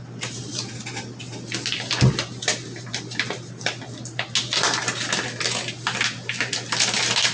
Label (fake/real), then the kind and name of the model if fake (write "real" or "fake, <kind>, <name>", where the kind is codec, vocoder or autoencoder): real